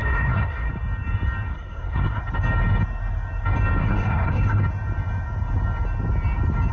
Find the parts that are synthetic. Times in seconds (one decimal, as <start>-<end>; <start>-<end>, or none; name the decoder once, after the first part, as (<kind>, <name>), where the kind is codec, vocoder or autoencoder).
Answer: 0.0-0.7 (codec, SNAC); 1.5-2.2; 3.8-4.6